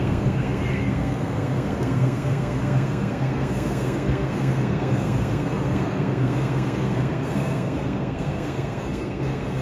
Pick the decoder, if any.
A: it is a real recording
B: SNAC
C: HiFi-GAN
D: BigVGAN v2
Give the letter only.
B